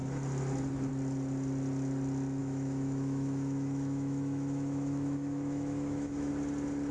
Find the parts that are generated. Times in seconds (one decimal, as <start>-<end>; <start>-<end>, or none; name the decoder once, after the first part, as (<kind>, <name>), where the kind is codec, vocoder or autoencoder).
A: 2.4-6.3 (autoencoder, DAC-VAE)